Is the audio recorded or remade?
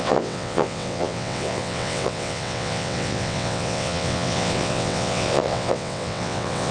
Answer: remade